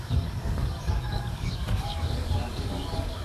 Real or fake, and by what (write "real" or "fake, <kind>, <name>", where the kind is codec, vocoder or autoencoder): fake, codec, DAC